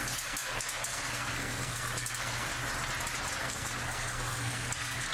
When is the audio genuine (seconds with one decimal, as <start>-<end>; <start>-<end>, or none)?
2.5-3.4